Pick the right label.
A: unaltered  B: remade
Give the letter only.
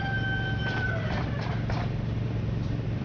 B